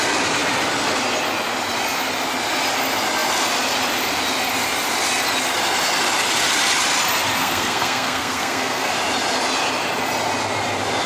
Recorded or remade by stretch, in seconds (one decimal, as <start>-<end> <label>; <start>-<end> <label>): 0.0-7.4 recorded; 7.4-8.9 remade; 8.9-11.1 recorded